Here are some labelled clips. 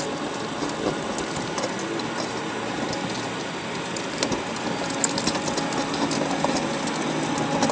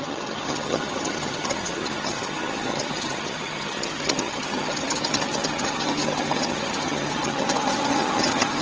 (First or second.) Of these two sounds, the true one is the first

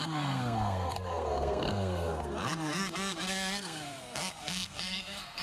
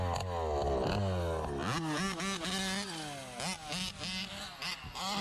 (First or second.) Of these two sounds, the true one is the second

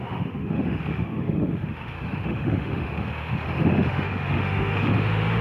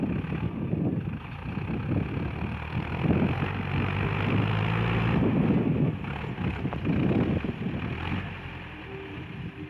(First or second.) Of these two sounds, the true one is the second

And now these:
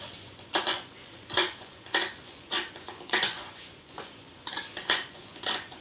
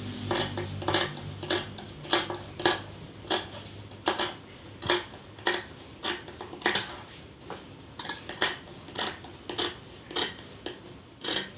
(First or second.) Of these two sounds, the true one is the second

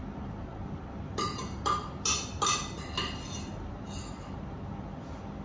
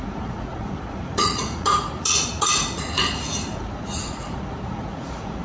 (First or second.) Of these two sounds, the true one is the first